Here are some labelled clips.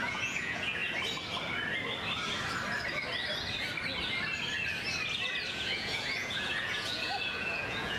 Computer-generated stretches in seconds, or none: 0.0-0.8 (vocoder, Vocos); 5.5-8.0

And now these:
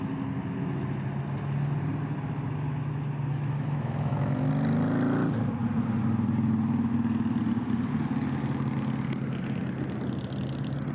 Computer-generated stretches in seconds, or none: 3.3-4.5 (autoencoder, DAC-VAE)